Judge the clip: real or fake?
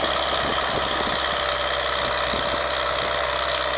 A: real